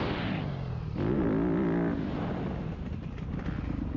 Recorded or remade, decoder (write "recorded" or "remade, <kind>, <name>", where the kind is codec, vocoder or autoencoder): recorded